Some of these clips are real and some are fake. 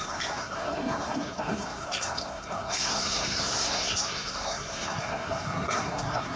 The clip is fake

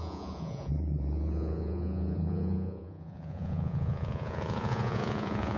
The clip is fake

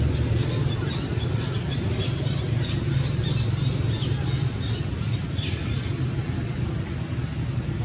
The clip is real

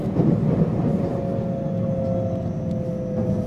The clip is real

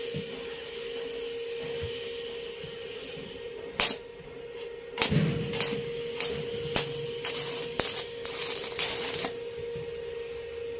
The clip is real